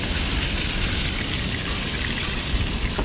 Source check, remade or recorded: remade